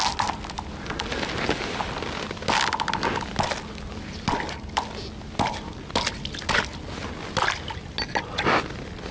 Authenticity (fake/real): real